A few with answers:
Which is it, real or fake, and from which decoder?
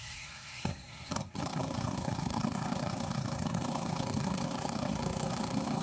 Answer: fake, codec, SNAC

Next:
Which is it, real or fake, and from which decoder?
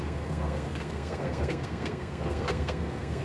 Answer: fake, codec, SNAC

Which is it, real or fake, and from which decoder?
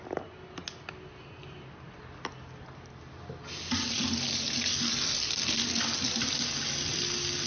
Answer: real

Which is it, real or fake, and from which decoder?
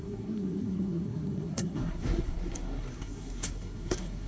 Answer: fake, codec, SNAC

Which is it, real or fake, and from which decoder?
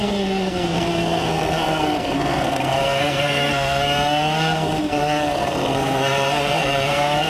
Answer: fake, codec, SNAC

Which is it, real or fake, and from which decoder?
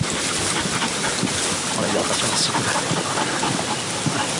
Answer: real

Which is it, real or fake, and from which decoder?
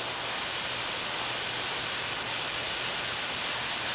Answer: real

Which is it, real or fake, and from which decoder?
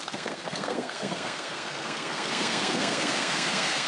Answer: fake, codec, SNAC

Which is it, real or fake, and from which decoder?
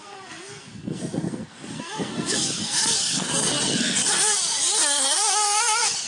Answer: fake, codec, SNAC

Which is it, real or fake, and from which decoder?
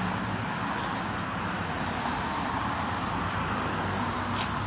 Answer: real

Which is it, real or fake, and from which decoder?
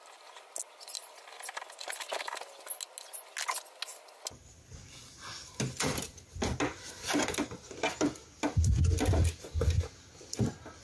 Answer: real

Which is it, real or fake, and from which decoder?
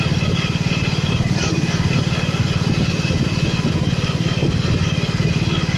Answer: real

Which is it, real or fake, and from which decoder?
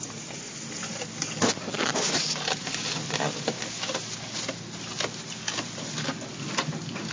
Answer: real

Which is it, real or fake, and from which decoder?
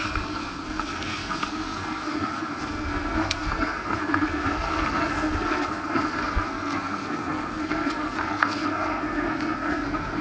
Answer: fake, codec, SNAC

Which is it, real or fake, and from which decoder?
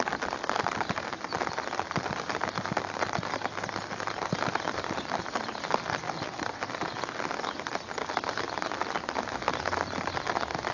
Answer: real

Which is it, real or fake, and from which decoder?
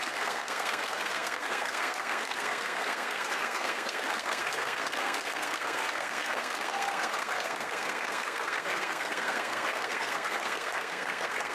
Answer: fake, codec, SNAC